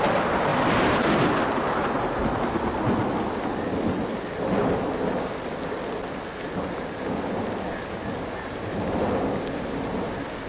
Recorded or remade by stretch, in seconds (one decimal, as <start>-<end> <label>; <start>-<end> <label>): 0.0-10.5 recorded